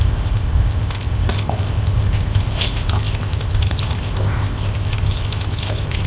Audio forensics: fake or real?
fake